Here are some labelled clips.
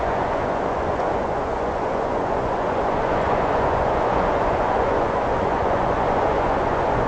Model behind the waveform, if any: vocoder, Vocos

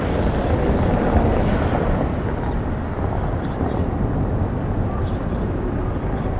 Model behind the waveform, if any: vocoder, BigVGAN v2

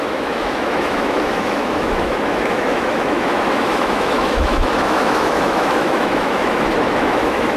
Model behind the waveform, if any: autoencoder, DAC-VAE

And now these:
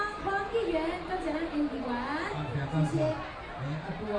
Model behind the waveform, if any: none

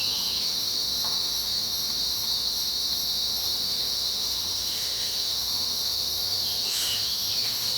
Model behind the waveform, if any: autoencoder, DAC-VAE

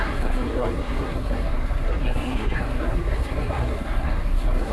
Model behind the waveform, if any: codec, SNAC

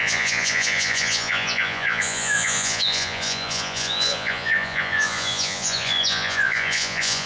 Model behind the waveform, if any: vocoder, Vocos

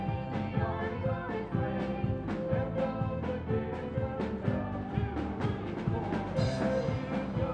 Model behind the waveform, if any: none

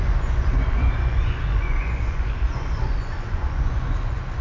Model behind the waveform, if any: vocoder, Vocos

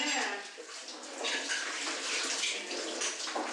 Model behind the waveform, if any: none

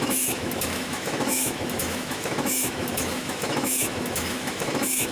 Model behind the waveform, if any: autoencoder, DAC-VAE